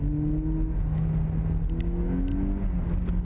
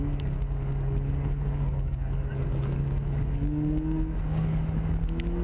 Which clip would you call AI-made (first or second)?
second